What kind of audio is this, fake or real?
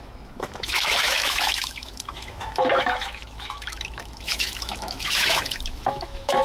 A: fake